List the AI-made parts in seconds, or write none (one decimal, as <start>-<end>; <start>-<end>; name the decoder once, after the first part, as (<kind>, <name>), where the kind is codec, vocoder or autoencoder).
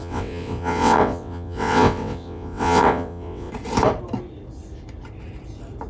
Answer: 0.0-3.5 (vocoder, WaveNeXt)